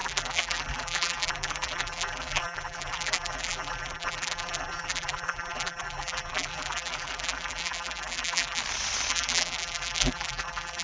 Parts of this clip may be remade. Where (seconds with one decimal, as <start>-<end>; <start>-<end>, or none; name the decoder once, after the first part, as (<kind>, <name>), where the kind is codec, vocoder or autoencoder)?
0.0-8.6 (vocoder, BigVGAN v2); 9.1-10.8

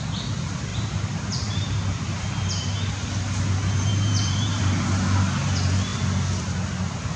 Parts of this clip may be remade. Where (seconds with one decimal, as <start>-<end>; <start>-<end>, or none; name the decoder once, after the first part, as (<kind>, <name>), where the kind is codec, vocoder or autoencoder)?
0.7-2.9 (vocoder, BigVGAN v2); 3.9-4.6

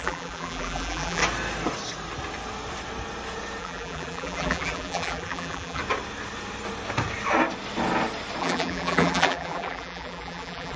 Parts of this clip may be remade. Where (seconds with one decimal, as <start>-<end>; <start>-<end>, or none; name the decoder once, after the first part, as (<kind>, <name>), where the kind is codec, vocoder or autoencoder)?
0.0-1.2 (vocoder, BigVGAN v2); 3.6-5.8; 8.4-10.8

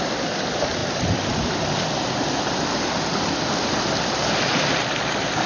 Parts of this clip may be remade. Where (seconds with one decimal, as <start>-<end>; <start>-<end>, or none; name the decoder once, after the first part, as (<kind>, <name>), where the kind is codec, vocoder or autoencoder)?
none

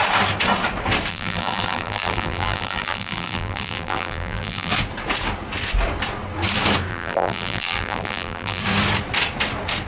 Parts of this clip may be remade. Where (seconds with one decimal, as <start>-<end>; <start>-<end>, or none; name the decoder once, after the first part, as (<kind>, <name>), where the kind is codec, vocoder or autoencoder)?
1.1-4.7 (vocoder, BigVGAN v2); 6.9-8.6

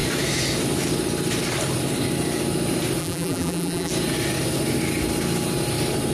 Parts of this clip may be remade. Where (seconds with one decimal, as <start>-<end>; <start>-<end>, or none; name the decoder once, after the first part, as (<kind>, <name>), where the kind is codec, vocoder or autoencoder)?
3.0-3.9 (vocoder, BigVGAN v2)

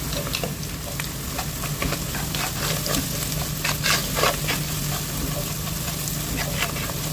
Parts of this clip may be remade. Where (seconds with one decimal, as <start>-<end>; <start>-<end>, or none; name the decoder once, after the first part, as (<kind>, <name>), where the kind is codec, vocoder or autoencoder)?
4.0-4.9 (vocoder, BigVGAN v2)